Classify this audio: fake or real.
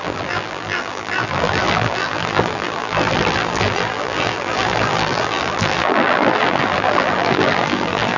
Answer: fake